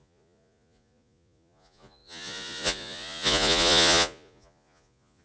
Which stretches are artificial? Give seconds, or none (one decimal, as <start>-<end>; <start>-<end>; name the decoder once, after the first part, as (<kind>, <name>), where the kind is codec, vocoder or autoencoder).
0.0-5.2 (vocoder, Vocos)